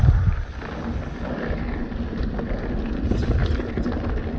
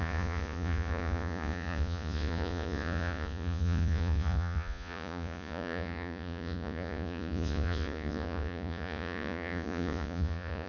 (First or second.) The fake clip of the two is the second